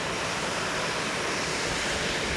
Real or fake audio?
real